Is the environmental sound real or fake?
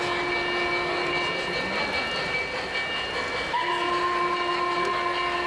real